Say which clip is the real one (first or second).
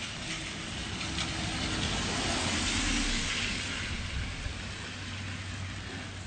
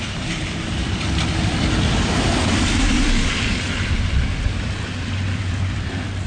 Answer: first